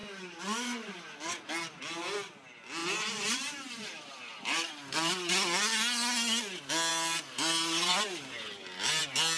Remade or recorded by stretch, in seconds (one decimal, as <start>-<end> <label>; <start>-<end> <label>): 0.0-2.8 recorded; 2.8-4.7 remade; 4.7-6.9 recorded; 6.9-9.0 remade; 9.0-9.4 recorded